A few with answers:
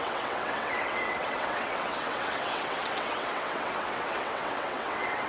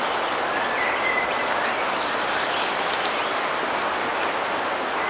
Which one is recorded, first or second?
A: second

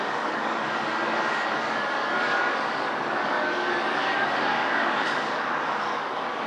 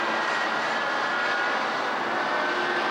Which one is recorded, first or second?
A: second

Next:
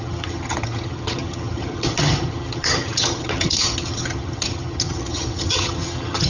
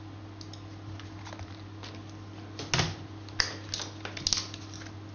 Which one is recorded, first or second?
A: second